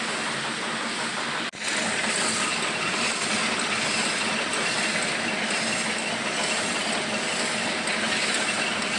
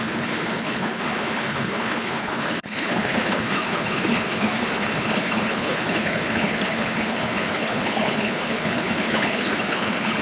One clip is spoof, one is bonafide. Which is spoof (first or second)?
second